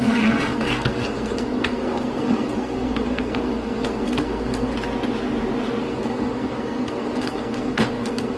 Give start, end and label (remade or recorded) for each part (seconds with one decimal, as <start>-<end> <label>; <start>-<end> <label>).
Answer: 0.0-4.7 remade; 4.7-5.8 recorded; 5.8-8.4 remade